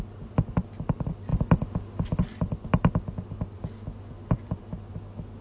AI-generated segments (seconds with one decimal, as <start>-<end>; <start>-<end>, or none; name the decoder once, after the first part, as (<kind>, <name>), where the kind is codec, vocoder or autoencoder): none